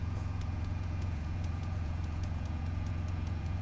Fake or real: fake